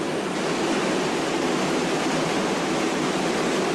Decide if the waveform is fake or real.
real